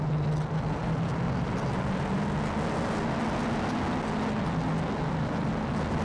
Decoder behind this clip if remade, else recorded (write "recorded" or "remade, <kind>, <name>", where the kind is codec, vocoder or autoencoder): recorded